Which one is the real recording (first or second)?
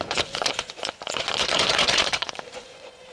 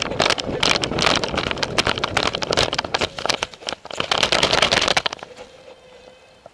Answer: second